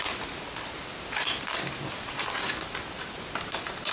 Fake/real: real